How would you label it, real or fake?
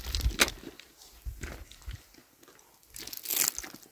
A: real